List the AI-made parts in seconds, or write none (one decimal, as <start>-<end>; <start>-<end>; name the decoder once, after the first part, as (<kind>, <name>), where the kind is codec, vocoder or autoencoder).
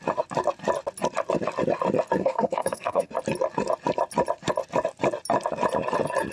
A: 2.2-3.1 (codec, SNAC)